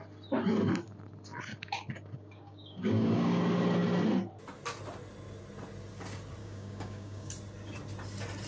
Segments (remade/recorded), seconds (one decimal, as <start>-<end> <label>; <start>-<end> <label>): 0.0-1.5 recorded; 1.5-3.4 remade; 3.4-6.4 recorded; 6.4-7.3 remade; 7.3-8.5 recorded